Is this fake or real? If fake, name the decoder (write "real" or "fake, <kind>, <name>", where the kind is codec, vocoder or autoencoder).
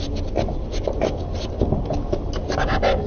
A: real